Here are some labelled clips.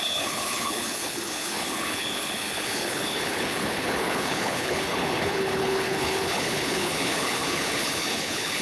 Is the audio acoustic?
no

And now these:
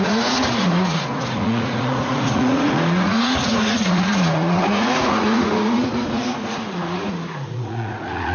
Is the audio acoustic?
no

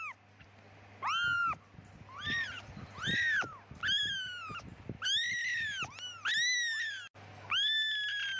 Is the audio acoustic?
yes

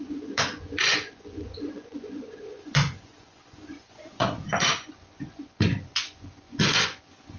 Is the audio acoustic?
no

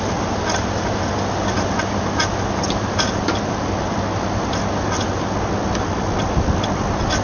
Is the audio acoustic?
yes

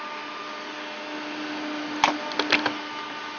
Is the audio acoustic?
yes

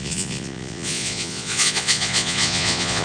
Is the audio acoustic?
no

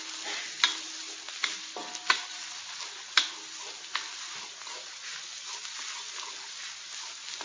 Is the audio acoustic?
yes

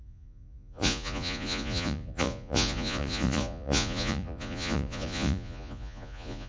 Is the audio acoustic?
no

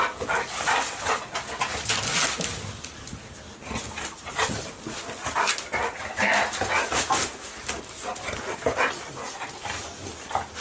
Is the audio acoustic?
yes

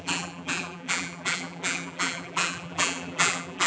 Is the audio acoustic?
no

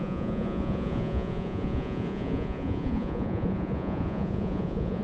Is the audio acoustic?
no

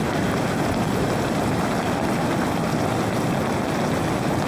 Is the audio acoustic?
yes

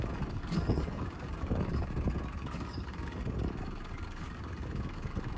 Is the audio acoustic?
no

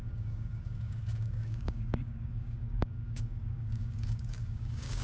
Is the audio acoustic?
no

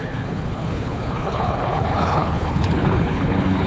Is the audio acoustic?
no